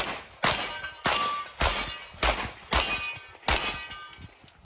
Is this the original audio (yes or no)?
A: yes